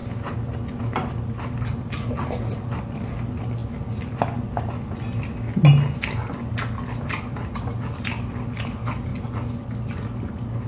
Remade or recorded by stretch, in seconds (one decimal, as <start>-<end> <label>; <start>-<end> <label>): 0.0-10.7 recorded